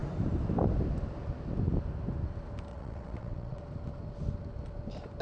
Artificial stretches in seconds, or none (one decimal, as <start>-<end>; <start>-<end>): 2.7-3.6